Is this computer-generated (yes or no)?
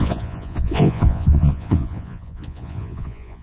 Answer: yes